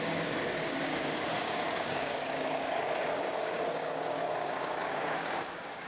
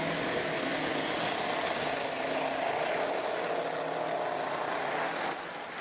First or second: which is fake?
first